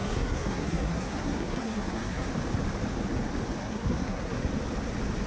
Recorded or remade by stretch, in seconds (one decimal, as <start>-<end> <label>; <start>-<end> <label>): 0.0-2.3 remade; 2.3-3.6 recorded; 3.6-4.4 remade; 4.4-5.3 recorded